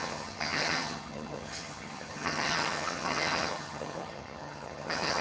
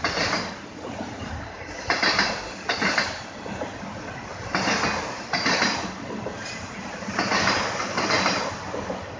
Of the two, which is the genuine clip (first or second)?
second